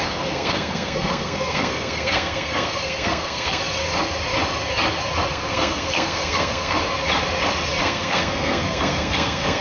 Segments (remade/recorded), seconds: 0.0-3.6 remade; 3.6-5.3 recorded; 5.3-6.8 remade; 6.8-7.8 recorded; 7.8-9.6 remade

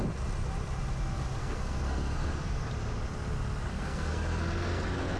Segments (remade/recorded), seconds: 0.0-1.4 recorded; 1.4-2.7 remade; 2.7-3.7 recorded; 3.7-5.2 remade

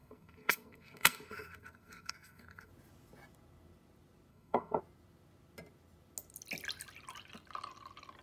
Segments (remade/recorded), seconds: 0.0-2.7 remade; 2.7-4.3 recorded; 4.3-4.8 remade; 4.8-8.2 recorded

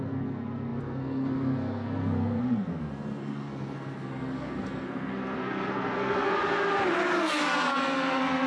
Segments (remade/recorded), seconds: 0.0-6.4 remade; 6.4-7.2 recorded; 7.2-8.5 remade

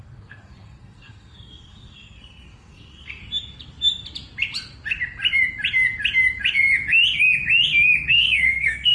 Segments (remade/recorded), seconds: 0.0-3.2 remade; 3.2-8.1 recorded; 8.1-8.9 remade

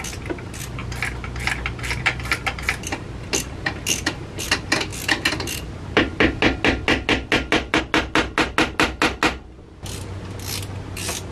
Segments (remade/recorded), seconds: 0.0-11.3 recorded